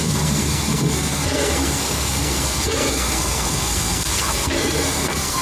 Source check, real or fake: fake